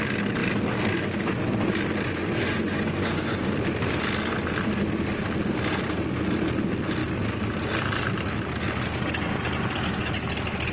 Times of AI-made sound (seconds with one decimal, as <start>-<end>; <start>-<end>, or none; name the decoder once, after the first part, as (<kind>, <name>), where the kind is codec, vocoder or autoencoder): 2.2-3.4 (vocoder, Vocos)